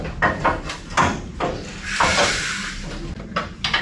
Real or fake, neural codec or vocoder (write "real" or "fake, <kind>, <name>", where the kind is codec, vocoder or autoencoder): real